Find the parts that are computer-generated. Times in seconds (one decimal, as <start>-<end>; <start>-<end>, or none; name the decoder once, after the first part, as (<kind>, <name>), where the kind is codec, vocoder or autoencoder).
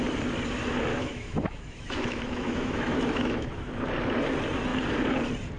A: 0.9-3.7 (autoencoder, DAC-VAE)